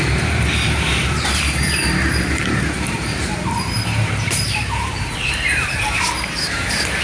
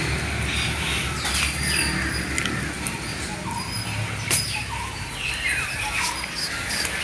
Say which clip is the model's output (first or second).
first